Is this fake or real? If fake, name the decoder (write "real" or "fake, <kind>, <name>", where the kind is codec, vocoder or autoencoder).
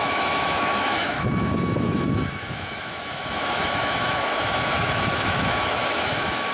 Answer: fake, autoencoder, DAC-VAE